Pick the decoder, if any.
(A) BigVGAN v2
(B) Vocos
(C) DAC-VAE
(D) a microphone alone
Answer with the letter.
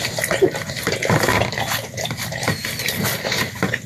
D